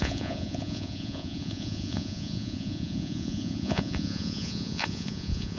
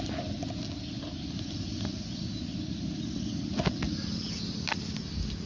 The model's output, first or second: first